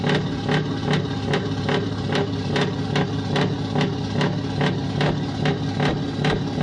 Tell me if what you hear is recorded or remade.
recorded